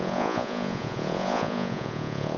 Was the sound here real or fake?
fake